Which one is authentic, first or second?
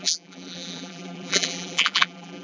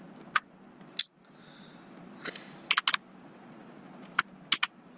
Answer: second